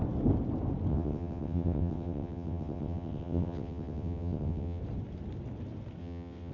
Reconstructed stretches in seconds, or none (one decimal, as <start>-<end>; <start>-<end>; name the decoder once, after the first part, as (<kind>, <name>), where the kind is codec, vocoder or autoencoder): 0.9-4.8 (vocoder, WaveNeXt); 6.0-6.5